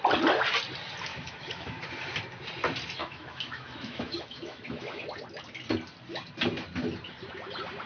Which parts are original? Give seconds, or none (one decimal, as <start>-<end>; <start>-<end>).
0.0-1.1; 1.9-3.0; 5.0-7.9